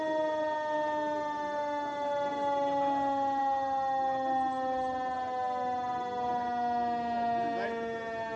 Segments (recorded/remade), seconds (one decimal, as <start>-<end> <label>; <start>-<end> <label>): 0.0-8.4 recorded